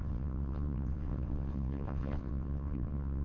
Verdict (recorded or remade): remade